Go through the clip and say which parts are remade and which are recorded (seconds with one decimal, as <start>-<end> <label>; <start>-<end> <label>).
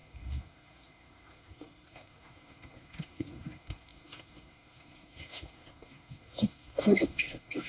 0.0-7.7 remade